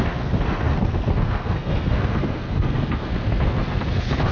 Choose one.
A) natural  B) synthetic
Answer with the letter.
B